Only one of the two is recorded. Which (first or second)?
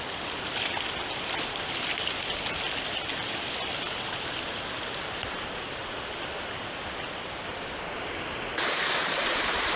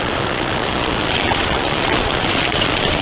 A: first